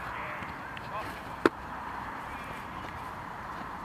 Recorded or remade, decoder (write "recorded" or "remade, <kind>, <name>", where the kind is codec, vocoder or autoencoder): remade, vocoder, BigVGAN v2